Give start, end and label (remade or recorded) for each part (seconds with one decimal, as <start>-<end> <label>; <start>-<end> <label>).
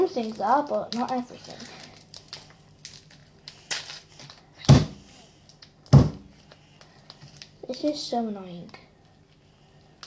0.0-10.1 recorded